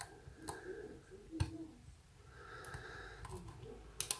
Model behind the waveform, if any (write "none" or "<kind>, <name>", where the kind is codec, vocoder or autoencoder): none